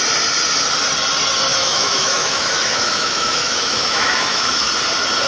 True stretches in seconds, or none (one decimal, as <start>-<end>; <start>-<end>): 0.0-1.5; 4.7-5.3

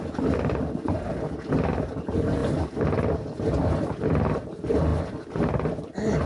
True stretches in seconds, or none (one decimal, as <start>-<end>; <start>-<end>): 0.0-6.3

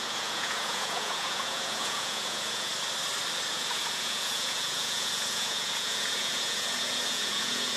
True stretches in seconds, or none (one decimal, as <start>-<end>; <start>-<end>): 2.7-3.5